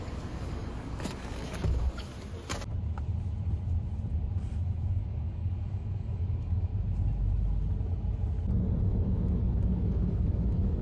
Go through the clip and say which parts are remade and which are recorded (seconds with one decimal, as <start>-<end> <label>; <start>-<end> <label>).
0.0-2.1 remade; 2.1-4.8 recorded; 4.8-6.7 remade; 6.7-8.8 recorded; 8.8-10.8 remade